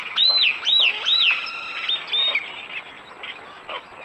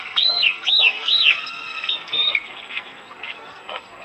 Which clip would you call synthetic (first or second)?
second